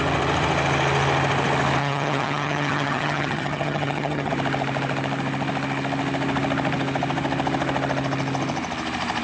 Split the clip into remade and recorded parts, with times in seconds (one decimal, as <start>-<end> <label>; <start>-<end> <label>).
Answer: 0.0-1.8 recorded; 1.8-4.3 remade; 4.3-9.2 recorded